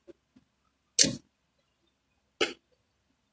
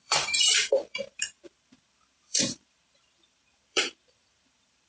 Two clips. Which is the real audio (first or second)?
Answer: first